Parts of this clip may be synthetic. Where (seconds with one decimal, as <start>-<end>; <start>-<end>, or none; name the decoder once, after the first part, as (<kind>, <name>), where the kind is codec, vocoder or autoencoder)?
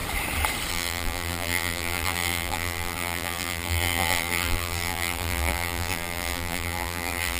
0.7-7.4 (vocoder, BigVGAN v2)